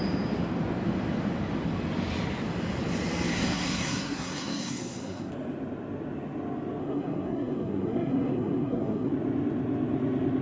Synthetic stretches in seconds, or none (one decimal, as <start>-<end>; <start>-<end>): 3.3-5.3; 6.8-9.1